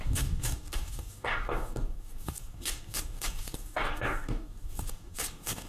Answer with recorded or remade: remade